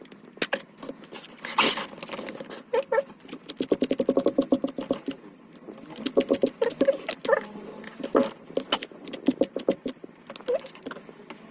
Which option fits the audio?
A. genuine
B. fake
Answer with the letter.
A